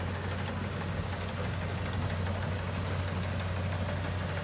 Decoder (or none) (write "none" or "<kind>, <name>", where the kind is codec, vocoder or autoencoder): none